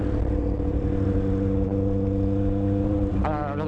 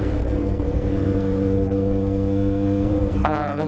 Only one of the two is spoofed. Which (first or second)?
second